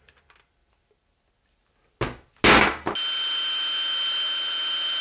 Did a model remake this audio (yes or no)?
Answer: no